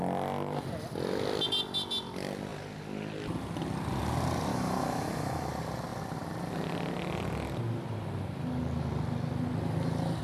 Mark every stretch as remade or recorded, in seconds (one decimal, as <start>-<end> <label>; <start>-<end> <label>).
0.0-4.5 recorded; 4.5-5.5 remade; 5.5-10.2 recorded